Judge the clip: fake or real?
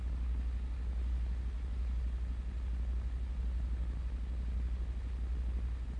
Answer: real